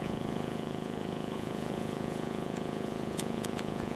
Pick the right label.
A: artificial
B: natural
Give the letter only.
A